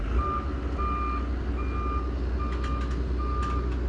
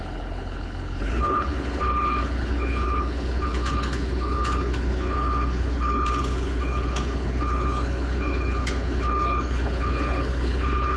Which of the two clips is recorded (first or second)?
first